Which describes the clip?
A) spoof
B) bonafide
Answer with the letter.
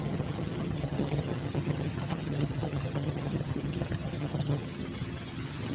A